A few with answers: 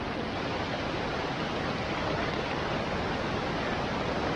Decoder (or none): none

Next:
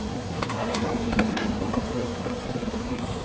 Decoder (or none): codec, SNAC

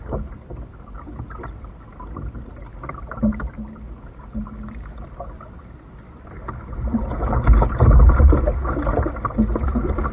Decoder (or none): none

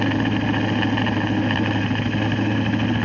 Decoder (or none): none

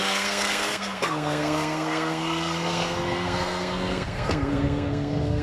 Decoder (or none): codec, SNAC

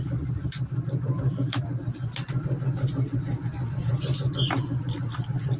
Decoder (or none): none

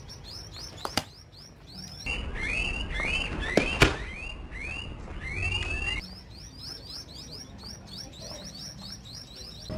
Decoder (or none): none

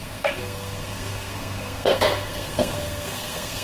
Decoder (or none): codec, SNAC